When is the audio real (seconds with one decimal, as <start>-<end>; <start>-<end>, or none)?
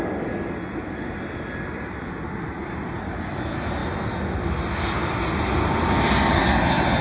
0.0-7.0